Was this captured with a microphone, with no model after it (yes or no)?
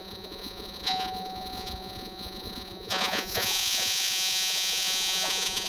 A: no